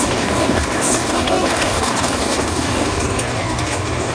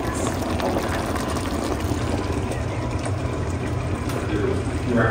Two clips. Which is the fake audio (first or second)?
first